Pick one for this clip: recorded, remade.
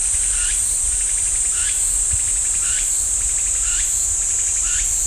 remade